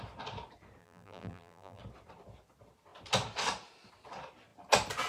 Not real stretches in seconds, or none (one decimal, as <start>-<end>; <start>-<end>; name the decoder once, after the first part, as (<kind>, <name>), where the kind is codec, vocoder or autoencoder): 0.8-1.8 (vocoder, BigVGAN v2)